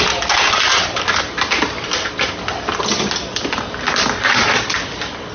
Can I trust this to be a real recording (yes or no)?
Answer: yes